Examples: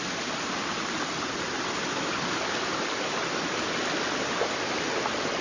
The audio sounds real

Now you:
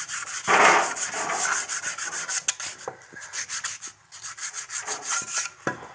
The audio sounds real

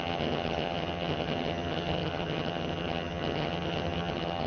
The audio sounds fake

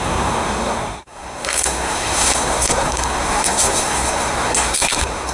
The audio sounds fake